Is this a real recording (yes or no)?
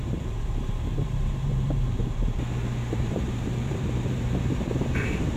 no